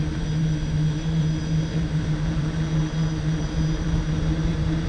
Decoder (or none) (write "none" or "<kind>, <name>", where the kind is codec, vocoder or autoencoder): vocoder, BigVGAN v2